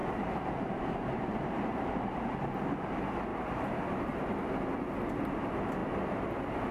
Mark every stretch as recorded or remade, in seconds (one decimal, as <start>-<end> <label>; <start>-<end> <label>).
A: 0.0-2.4 remade; 2.4-3.3 recorded; 3.3-4.6 remade; 4.6-6.7 recorded